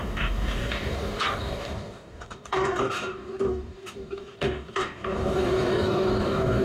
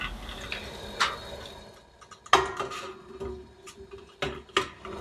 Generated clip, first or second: first